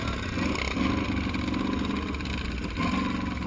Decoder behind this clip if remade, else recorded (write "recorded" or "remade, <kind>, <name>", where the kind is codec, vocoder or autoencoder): recorded